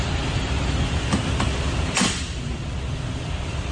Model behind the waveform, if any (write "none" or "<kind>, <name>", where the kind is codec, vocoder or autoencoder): none